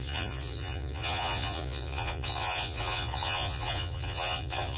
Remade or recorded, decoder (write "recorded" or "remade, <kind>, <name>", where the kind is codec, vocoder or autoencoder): remade, vocoder, Vocos